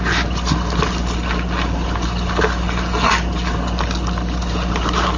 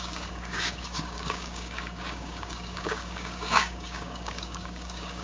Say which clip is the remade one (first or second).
second